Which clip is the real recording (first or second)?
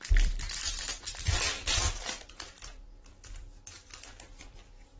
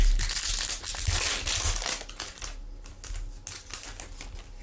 second